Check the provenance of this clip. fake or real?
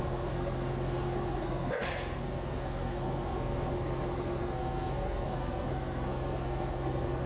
fake